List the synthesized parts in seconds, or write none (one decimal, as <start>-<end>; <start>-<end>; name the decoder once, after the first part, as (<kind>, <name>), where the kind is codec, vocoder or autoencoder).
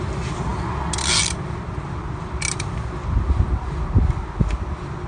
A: none